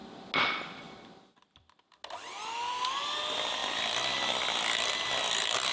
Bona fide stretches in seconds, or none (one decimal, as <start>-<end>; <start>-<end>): 0.0-5.7